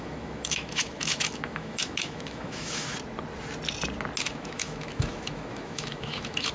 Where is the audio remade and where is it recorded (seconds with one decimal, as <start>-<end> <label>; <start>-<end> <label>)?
0.0-2.9 remade; 2.9-4.2 recorded; 4.2-6.5 remade